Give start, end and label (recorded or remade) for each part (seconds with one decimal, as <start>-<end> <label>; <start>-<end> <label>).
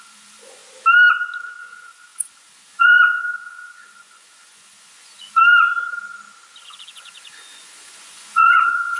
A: 0.0-0.6 remade; 0.6-1.6 recorded; 1.6-5.4 remade; 5.4-6.6 recorded; 6.6-9.0 remade